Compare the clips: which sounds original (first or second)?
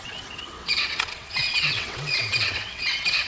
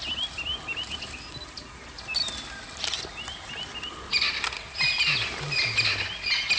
second